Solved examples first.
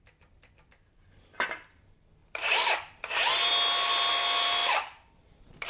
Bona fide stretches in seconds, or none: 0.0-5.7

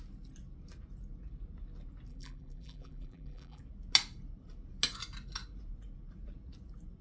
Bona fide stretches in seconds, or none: 0.0-2.1; 3.6-7.0

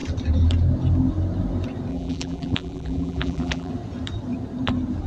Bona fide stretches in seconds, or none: 0.0-1.9; 3.7-5.1

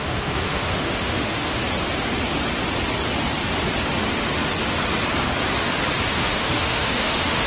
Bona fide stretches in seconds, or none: 1.6-6.1

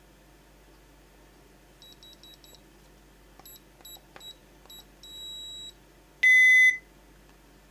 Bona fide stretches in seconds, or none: 0.0-7.7

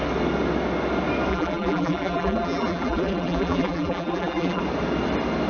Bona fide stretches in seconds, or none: 0.0-1.3; 4.6-5.5